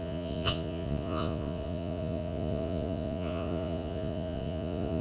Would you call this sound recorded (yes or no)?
no